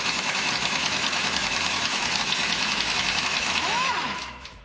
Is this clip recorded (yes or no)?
no